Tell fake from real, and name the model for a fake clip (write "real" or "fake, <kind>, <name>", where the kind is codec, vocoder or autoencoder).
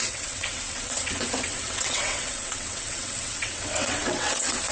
fake, vocoder, WaveNeXt